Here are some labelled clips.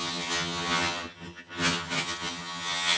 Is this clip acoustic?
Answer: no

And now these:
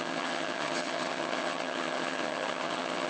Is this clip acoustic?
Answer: no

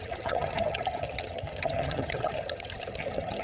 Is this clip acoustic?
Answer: no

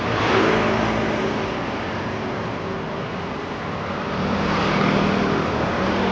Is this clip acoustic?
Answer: yes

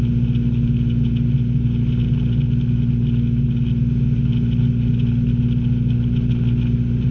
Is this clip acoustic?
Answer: yes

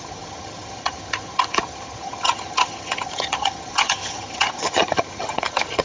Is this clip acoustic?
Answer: no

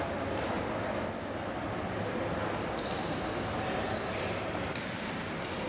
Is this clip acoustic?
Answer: yes